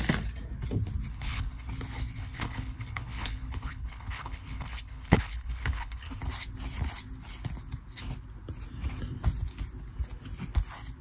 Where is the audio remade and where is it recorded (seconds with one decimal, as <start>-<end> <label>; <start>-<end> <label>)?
0.0-1.1 recorded; 1.1-1.7 remade; 1.7-2.2 recorded; 2.2-6.2 remade; 6.2-11.0 recorded